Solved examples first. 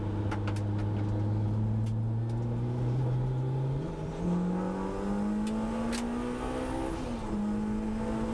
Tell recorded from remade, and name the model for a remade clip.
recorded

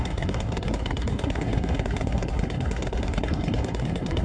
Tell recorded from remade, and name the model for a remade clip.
remade, codec, SNAC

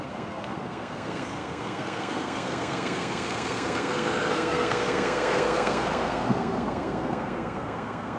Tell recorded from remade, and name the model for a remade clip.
remade, codec, SNAC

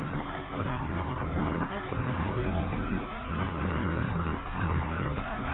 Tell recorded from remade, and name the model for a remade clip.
remade, codec, SNAC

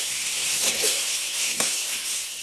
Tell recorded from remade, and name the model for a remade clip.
remade, codec, SNAC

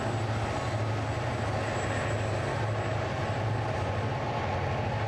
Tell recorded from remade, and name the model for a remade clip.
recorded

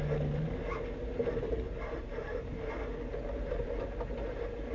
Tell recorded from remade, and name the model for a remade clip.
recorded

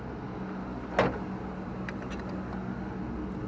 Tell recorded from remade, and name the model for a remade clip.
recorded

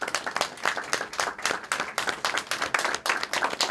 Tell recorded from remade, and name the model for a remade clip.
recorded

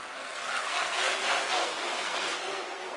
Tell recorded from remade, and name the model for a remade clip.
remade, codec, SNAC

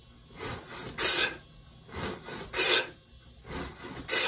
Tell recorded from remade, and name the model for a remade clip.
recorded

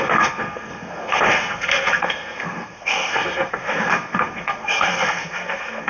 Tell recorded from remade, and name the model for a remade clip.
remade, codec, SNAC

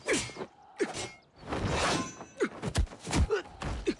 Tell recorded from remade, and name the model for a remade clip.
recorded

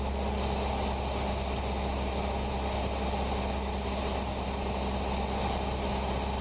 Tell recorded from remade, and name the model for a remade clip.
recorded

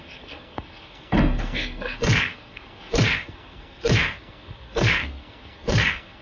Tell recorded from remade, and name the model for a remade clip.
remade, codec, SNAC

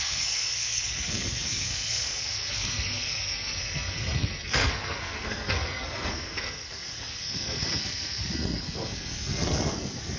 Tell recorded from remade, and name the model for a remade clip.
remade, codec, SNAC